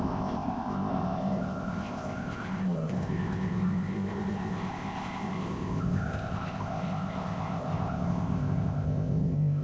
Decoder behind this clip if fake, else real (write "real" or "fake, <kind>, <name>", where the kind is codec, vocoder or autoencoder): fake, codec, ZipCodec